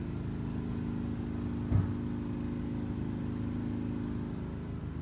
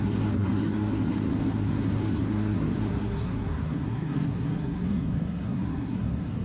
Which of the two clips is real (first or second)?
first